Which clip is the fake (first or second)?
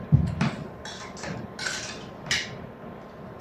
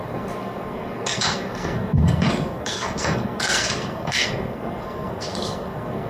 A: second